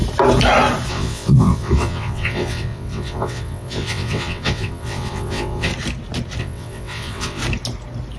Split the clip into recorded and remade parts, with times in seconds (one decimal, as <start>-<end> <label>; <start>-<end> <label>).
0.0-0.9 recorded; 0.9-5.7 remade; 5.7-6.4 recorded; 6.4-7.4 remade; 7.4-8.2 recorded